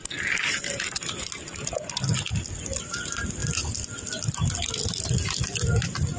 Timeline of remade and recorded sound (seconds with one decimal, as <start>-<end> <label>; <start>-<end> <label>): 0.0-6.2 recorded